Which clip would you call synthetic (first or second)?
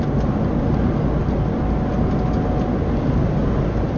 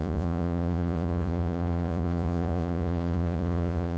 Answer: second